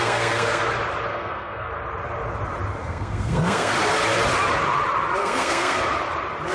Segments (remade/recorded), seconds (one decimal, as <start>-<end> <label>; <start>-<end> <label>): 0.0-0.6 remade; 0.6-1.1 recorded; 1.1-1.7 remade; 1.7-2.8 recorded; 2.8-3.7 remade; 3.7-5.2 recorded; 5.2-5.8 remade; 5.8-6.5 recorded